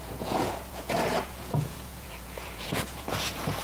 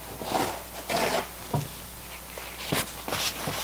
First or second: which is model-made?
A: first